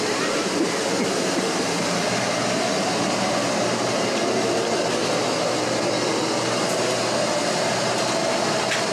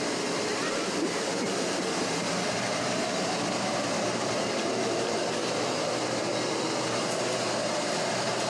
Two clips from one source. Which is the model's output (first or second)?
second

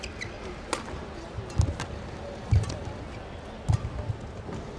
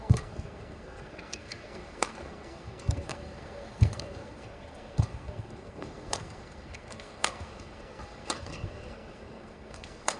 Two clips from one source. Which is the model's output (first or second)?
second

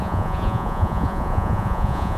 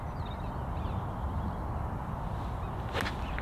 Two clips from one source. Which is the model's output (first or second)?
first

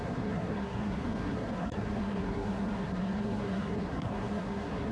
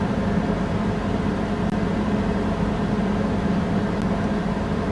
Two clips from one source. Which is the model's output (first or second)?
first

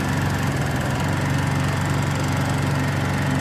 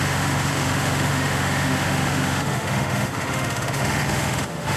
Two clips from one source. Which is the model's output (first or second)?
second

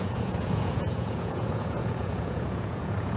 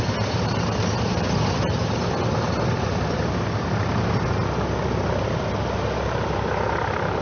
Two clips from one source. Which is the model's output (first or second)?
first